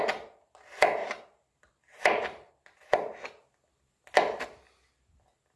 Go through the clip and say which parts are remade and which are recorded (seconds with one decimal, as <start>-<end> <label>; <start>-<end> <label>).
0.0-1.0 recorded; 1.0-2.5 remade; 2.5-5.6 recorded